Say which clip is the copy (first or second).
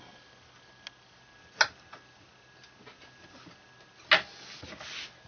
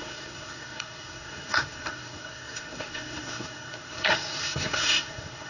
second